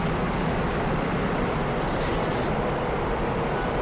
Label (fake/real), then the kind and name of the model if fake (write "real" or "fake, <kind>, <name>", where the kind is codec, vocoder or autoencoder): real